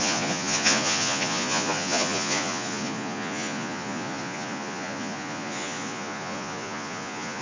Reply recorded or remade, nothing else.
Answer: remade